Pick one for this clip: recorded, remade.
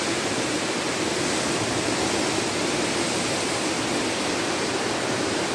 recorded